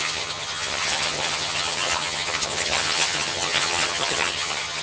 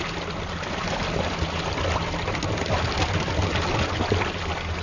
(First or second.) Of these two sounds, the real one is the second